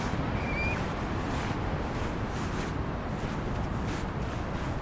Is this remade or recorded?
recorded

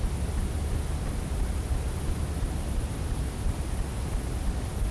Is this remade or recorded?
recorded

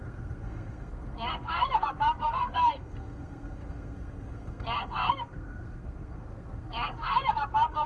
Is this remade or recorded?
remade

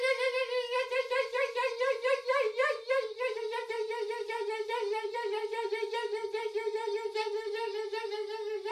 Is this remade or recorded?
recorded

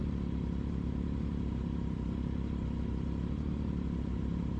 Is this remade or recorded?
recorded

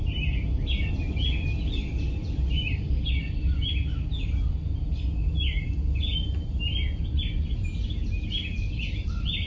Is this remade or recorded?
recorded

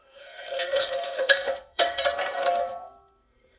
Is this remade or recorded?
remade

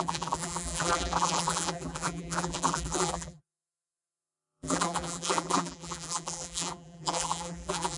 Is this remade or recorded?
remade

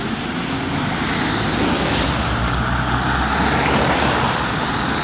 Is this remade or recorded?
recorded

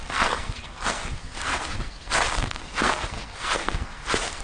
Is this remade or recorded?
remade